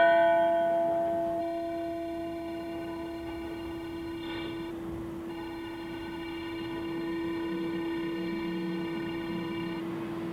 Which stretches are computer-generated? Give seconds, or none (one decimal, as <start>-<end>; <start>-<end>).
1.4-4.7; 5.3-9.8

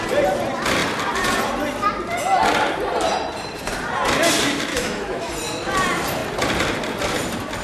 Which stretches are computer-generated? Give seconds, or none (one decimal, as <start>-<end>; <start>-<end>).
4.7-5.3

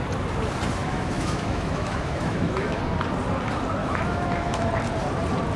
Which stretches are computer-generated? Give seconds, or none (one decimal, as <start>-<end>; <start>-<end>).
0.8-2.8; 3.8-4.7

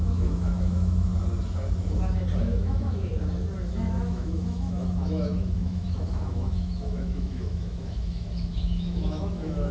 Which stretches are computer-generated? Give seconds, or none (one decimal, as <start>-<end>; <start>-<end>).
0.0-1.1; 2.4-3.1; 3.7-9.7

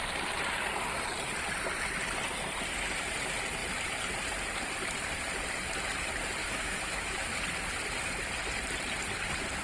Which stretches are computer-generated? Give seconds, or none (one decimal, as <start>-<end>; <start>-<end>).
6.4-7.3

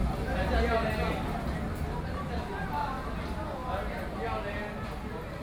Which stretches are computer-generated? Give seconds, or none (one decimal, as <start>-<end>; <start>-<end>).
none